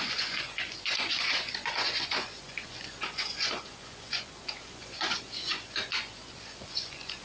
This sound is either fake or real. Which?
fake